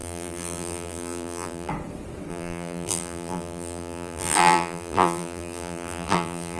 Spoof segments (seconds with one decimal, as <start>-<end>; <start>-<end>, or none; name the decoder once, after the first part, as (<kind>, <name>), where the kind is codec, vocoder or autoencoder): 0.0-1.7 (vocoder, BigVGAN v2); 2.3-6.6